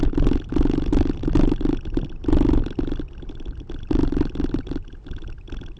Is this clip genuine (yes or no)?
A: yes